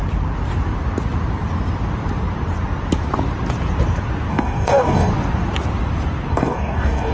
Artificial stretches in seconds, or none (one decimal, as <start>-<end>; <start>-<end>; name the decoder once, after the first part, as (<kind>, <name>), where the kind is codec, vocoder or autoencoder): 4.3-5.1 (codec, DAC); 6.3-7.1